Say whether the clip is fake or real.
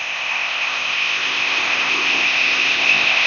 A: fake